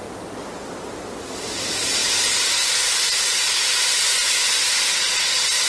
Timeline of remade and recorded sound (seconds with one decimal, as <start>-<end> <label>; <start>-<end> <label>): 0.0-5.7 recorded

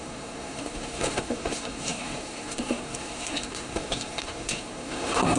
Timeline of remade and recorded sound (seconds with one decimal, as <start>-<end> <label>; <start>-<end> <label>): 0.0-5.4 remade

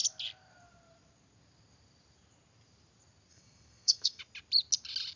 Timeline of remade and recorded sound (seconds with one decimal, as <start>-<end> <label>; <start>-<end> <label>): 0.0-3.3 recorded; 3.3-4.2 remade; 4.2-5.2 recorded

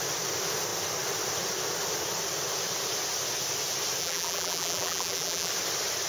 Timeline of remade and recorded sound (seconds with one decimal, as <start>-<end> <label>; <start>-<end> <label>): 0.0-4.0 recorded; 4.0-5.5 remade; 5.5-6.1 recorded